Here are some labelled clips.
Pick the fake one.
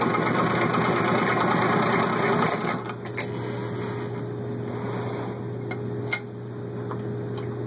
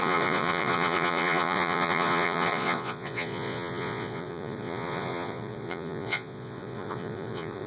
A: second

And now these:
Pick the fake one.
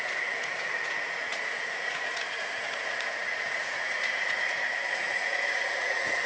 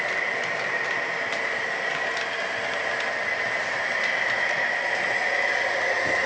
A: first